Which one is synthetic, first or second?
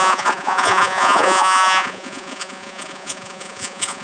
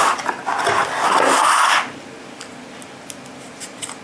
first